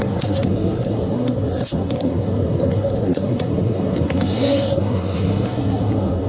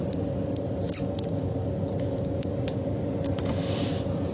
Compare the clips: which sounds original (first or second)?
second